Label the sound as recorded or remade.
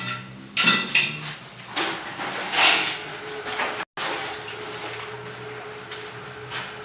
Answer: recorded